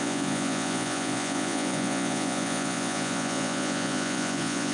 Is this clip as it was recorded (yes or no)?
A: no